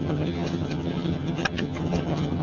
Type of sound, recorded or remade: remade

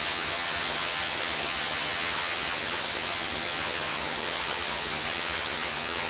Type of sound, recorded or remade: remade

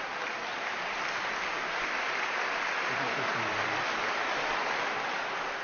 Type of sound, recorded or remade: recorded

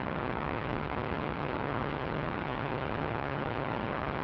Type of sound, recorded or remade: remade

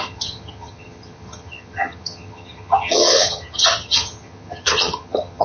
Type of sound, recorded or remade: remade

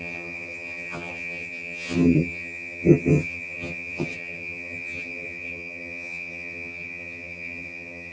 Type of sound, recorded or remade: remade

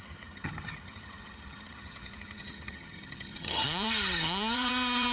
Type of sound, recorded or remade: remade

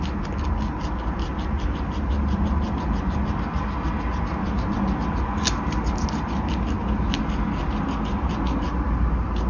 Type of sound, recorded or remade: recorded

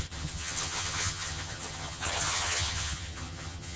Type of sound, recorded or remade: remade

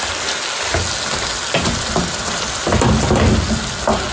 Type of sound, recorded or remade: recorded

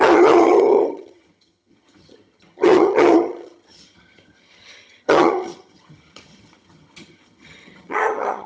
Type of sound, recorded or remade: remade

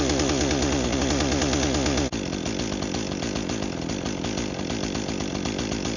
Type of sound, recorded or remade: recorded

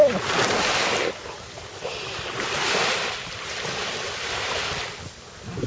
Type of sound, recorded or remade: recorded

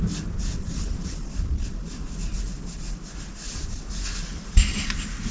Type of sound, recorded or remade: recorded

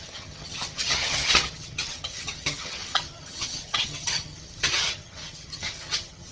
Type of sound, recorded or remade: remade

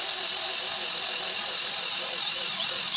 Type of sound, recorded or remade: recorded